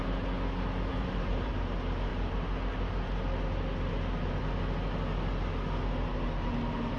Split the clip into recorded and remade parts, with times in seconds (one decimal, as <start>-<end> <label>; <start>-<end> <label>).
0.0-0.9 recorded; 0.9-1.5 remade; 1.5-7.0 recorded